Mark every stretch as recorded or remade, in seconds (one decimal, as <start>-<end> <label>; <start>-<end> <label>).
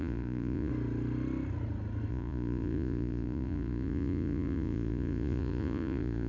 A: 0.0-0.7 remade; 0.7-2.1 recorded; 2.1-6.3 remade